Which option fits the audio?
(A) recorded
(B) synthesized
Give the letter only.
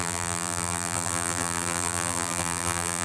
B